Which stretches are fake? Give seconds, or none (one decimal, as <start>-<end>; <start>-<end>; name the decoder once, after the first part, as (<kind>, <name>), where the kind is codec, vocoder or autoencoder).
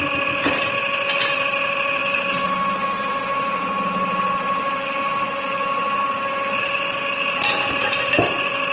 3.6-7.0 (vocoder, BigVGAN v2)